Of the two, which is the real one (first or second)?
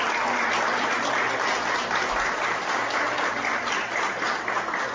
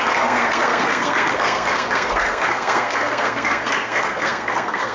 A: first